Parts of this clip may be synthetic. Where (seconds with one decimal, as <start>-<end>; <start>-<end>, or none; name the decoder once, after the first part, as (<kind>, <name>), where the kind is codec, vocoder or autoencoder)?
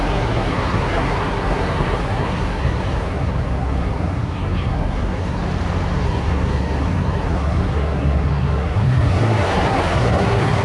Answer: 0.0-5.4 (codec, SNAC); 6.0-10.6